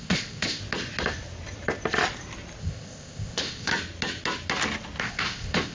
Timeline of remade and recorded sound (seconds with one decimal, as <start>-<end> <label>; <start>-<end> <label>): 0.0-0.6 remade; 0.6-2.6 recorded; 2.6-3.7 remade; 3.7-5.0 recorded; 5.0-5.7 remade